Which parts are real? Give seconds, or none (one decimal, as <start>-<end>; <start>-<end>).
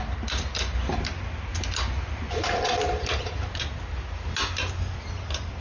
0.0-1.5; 3.3-5.6